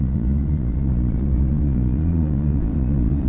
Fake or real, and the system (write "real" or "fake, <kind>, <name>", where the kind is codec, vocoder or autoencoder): fake, vocoder, Vocos